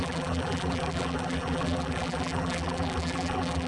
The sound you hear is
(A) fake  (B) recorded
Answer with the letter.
A